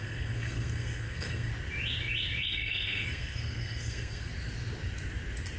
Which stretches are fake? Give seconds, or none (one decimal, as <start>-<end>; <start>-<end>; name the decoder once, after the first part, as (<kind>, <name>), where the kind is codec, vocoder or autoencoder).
0.0-1.5 (codec, SNAC); 2.4-4.3